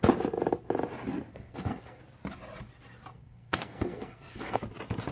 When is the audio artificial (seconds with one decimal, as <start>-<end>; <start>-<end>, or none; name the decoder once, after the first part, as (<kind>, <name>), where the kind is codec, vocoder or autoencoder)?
1.3-2.0 (codec, SNAC); 3.1-4.6